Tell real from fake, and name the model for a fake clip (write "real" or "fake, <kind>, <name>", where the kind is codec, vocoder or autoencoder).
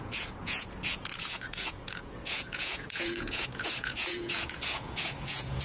fake, vocoder, Vocos